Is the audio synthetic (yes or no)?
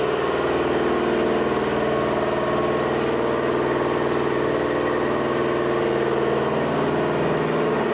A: no